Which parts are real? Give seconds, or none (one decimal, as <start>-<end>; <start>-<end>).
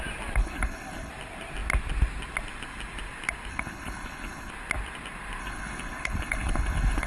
0.0-0.4; 1.1-3.5; 4.5-5.4